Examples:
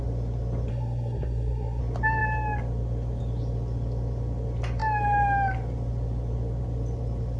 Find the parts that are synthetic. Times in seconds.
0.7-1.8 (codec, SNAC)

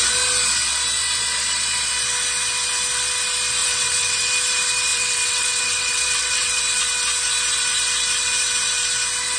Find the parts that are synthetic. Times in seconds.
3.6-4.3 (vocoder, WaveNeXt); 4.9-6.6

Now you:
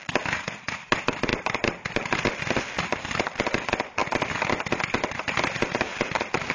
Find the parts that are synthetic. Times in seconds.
none

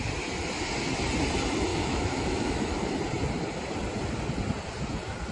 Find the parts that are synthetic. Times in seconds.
1.7-2.9 (autoencoder, DAC-VAE)

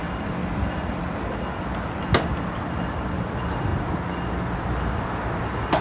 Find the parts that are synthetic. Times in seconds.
0.0-0.4 (vocoder, BigVGAN v2); 3.3-3.7; 4.4-5.8

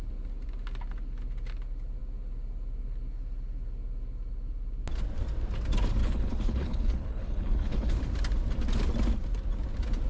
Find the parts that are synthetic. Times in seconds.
6.0-8.0 (codec, HILCodec)

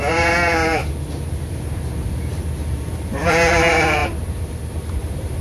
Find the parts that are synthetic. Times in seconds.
0.0-0.8 (vocoder, BigVGAN v2); 1.5-4.0; 4.9-5.4

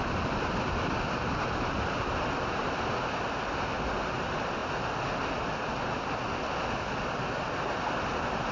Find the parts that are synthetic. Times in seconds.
none